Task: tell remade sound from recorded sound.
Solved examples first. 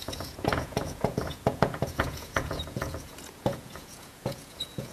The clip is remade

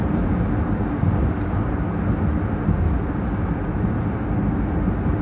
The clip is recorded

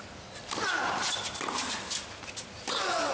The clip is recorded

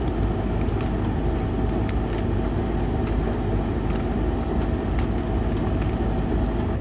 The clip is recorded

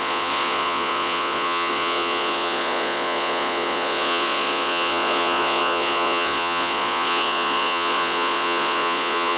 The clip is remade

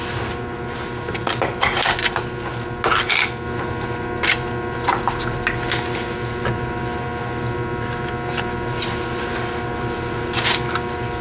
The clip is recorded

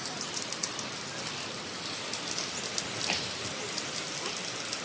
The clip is recorded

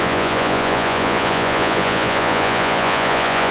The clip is remade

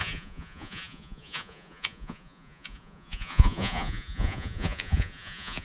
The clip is remade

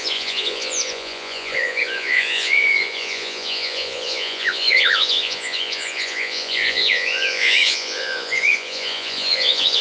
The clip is remade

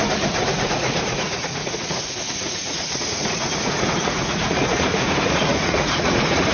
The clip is remade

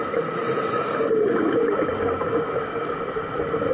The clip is recorded